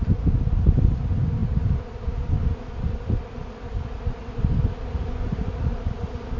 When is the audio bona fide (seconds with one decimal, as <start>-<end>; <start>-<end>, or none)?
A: 0.0-6.4